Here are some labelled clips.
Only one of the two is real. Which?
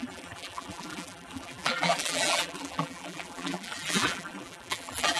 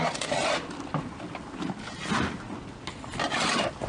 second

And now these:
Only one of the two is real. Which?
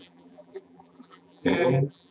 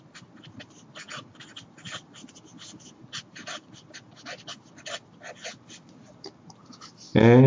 second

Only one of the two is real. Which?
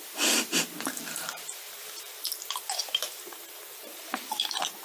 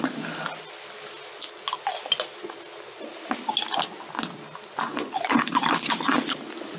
second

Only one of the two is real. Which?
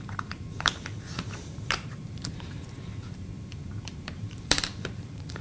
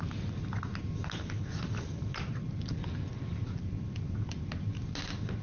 second